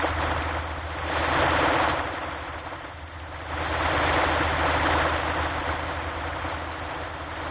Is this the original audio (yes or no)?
yes